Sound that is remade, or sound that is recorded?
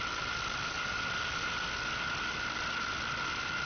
recorded